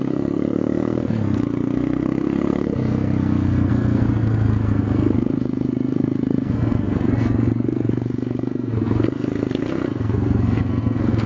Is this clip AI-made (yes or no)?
yes